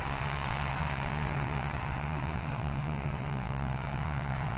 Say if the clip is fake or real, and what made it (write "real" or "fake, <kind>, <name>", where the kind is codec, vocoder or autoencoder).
fake, vocoder, WaveNeXt